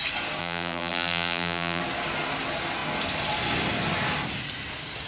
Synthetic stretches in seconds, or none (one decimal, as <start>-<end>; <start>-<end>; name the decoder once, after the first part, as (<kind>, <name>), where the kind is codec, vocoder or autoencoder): 0.4-1.8 (vocoder, BigVGAN v2)